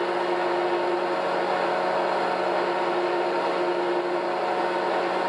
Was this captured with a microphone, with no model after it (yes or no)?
yes